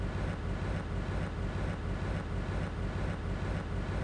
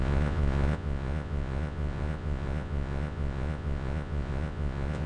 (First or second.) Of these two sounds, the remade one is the second